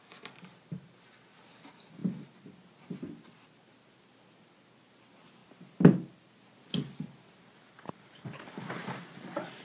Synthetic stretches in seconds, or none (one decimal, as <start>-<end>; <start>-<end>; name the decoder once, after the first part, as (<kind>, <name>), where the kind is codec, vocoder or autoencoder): none